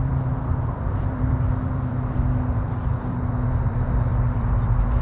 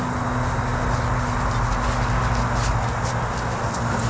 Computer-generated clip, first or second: first